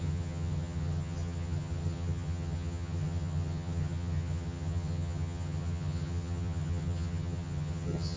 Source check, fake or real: fake